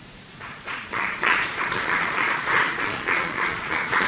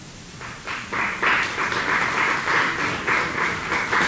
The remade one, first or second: first